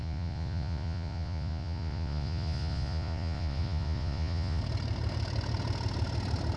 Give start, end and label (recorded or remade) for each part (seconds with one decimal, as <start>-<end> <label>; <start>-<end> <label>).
0.0-4.6 remade; 4.6-6.6 recorded